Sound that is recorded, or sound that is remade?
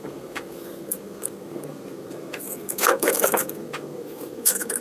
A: remade